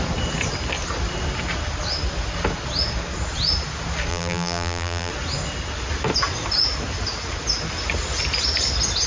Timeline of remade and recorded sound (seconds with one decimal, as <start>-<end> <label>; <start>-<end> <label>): 0.0-4.1 recorded; 4.1-5.1 remade; 5.1-9.1 recorded